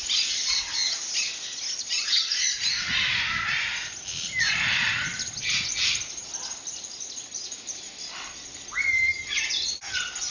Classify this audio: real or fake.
real